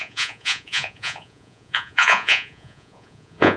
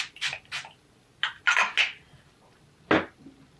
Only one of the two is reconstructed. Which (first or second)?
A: first